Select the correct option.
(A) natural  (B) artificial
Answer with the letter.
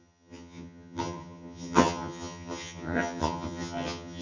B